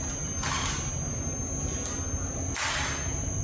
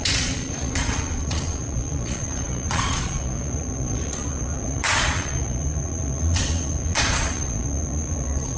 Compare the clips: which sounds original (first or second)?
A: first